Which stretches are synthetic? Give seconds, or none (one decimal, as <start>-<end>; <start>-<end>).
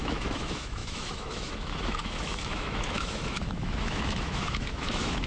0.0-5.3